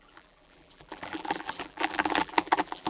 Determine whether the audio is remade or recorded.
remade